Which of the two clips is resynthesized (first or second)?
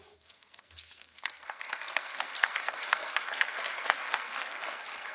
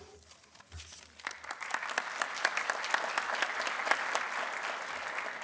first